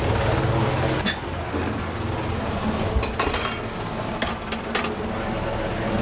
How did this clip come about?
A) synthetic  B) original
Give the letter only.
B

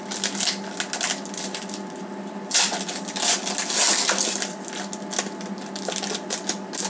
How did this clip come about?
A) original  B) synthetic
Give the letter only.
A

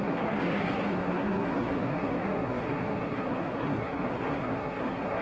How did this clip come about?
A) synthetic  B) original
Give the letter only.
A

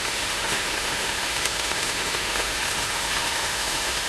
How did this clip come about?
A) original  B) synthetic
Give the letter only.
B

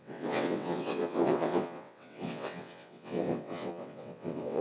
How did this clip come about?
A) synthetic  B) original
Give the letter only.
A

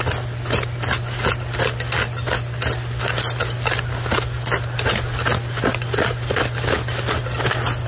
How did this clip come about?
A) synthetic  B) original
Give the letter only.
B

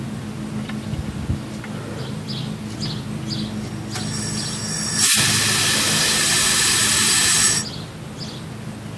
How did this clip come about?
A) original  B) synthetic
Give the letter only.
A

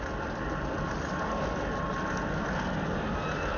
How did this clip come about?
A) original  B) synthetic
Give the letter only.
A